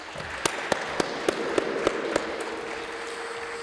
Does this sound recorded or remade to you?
recorded